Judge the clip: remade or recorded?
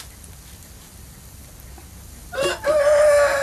recorded